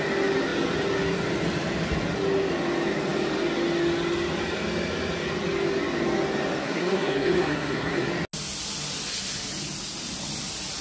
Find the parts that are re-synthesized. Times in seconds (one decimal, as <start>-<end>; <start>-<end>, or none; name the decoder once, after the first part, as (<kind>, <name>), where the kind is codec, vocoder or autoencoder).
6.6-8.1 (codec, SNAC)